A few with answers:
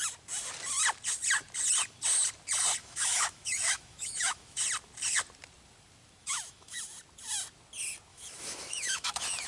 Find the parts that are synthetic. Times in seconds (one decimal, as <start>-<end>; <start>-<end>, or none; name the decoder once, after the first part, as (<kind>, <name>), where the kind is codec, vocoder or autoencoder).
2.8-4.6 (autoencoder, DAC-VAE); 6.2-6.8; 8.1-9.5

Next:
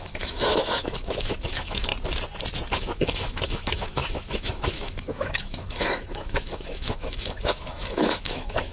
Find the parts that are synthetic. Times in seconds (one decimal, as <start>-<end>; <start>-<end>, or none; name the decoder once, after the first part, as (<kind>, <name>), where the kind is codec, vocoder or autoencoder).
0.0-1.9 (autoencoder, DAC-VAE); 2.7-8.7

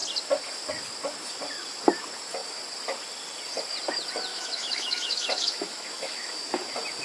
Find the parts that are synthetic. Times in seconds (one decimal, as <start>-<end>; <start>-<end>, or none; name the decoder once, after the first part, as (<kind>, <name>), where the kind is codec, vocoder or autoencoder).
4.3-6.6 (autoencoder, DAC-VAE)